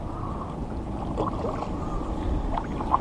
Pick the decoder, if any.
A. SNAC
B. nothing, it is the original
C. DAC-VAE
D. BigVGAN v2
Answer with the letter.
B